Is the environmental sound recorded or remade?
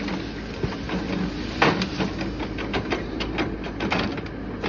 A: recorded